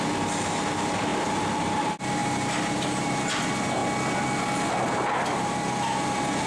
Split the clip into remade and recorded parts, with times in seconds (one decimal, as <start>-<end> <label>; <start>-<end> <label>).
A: 0.0-2.2 recorded; 2.2-3.3 remade; 3.3-6.5 recorded